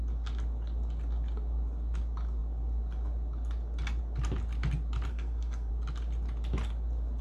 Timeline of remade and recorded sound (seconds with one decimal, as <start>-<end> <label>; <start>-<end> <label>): 0.0-5.1 recorded; 5.1-5.7 remade; 5.7-7.2 recorded